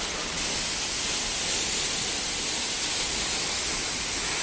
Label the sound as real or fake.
real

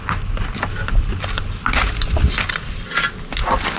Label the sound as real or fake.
real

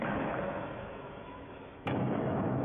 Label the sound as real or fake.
fake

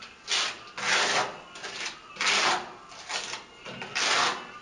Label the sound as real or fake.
real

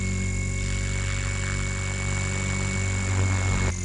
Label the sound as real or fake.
real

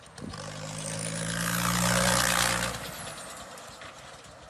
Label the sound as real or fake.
real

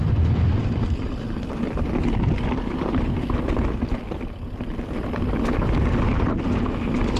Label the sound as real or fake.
real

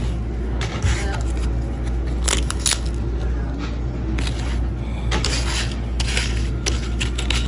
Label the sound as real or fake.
real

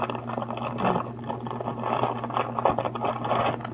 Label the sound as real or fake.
real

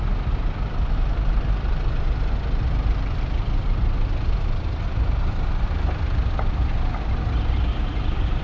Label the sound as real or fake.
real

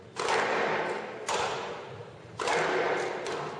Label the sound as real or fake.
real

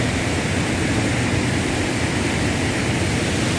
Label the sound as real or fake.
real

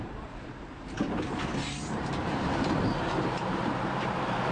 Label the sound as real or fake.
fake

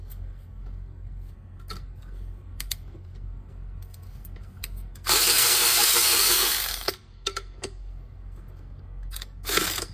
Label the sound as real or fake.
fake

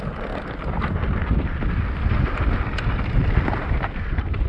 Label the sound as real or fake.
real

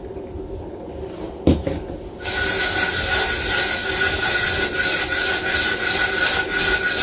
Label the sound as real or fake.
real